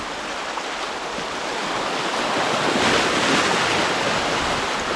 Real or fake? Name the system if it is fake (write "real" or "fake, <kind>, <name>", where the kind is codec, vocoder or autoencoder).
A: real